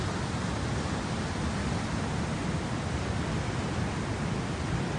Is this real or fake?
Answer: real